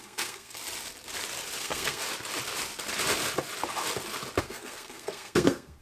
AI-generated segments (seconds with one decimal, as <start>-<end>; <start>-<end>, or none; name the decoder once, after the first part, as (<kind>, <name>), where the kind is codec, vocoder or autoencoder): 0.0-0.6 (codec, SNAC); 1.6-2.0; 4.4-5.8